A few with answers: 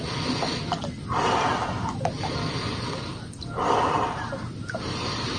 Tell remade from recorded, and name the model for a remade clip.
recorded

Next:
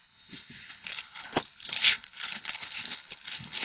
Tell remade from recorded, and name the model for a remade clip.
remade, codec, HILCodec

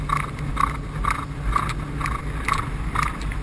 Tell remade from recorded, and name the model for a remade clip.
recorded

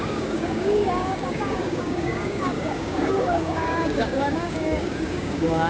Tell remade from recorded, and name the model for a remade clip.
remade, codec, DAC